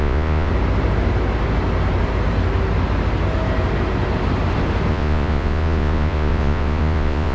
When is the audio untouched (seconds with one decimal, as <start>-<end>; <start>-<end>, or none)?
0.5-4.9